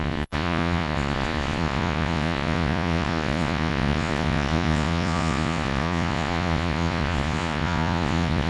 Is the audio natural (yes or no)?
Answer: no